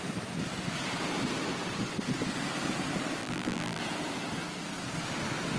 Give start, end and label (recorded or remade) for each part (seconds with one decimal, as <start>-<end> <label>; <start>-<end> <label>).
0.0-3.2 recorded; 3.2-3.8 remade; 3.8-5.6 recorded